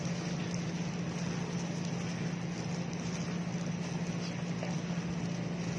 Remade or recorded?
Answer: recorded